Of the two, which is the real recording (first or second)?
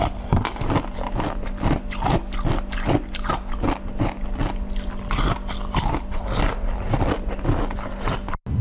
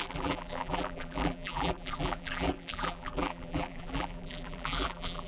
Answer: first